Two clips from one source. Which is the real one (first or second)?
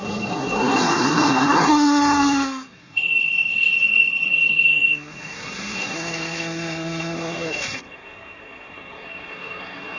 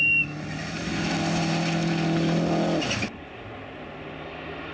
second